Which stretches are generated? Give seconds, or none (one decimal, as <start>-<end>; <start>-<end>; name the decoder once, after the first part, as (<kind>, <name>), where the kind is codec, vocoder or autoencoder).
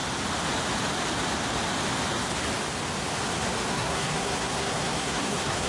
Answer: 3.7-5.7 (codec, SNAC)